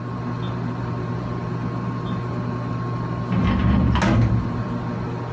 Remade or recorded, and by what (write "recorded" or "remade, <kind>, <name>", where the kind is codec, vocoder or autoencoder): recorded